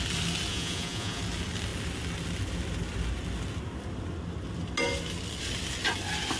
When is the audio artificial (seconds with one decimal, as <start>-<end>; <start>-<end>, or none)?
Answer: 0.5-1.2